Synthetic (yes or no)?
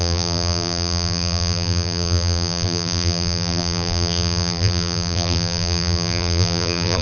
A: yes